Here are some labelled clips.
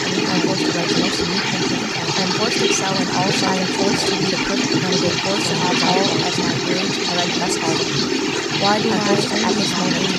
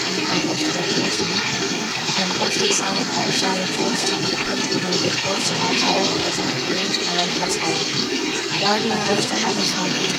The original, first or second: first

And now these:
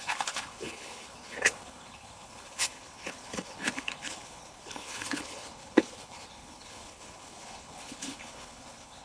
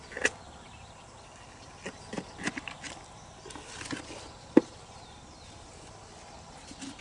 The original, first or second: second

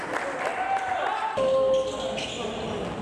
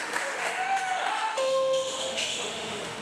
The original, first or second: first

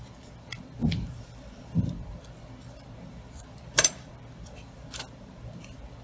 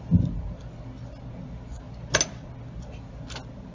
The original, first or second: second